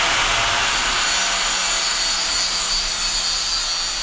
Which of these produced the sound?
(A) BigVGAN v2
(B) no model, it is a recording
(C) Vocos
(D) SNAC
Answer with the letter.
B